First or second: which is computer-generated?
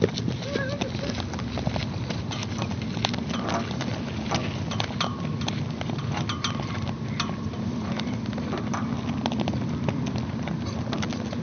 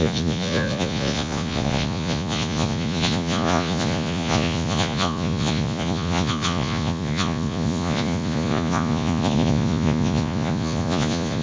second